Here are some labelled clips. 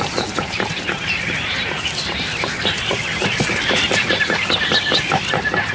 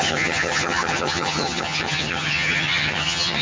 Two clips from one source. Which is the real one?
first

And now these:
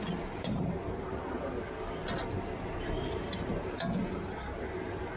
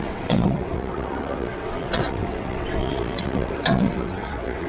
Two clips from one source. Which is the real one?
first